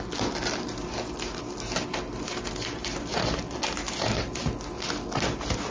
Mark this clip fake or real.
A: real